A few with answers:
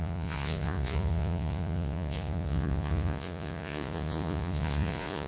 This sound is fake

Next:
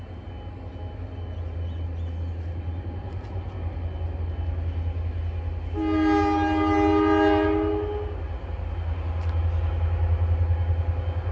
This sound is real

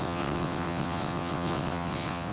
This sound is fake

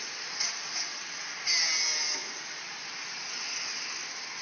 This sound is real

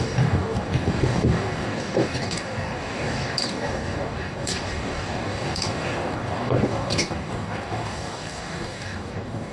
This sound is fake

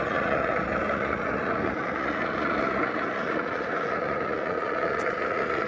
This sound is fake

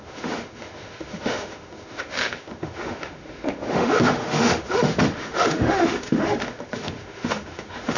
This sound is fake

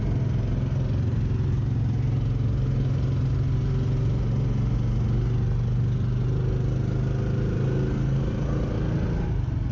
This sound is real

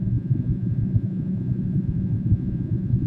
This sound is fake